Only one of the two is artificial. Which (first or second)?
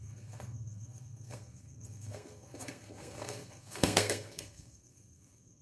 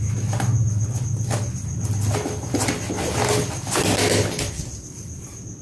first